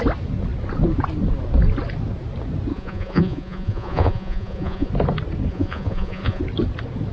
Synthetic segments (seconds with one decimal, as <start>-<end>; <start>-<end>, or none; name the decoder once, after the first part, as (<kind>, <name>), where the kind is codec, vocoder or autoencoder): 2.7-4.9 (vocoder, Vocos); 5.5-6.4